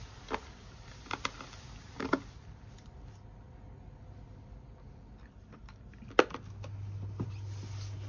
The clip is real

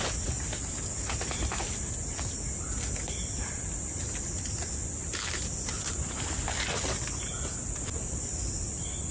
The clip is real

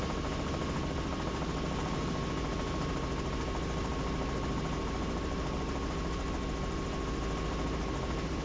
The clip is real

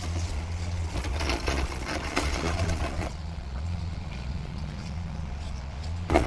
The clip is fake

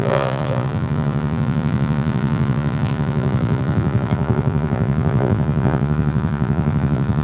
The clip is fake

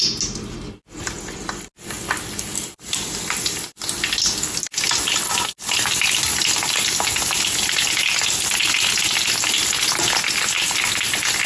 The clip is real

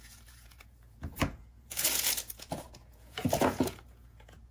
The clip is fake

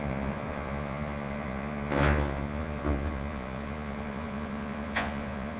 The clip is fake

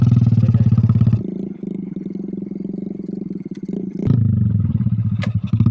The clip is real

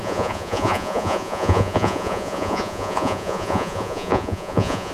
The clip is fake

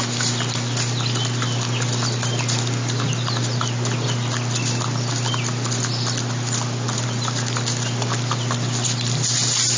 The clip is real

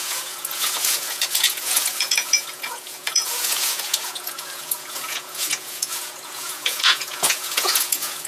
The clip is fake